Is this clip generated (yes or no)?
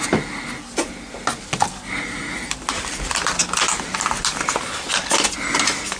no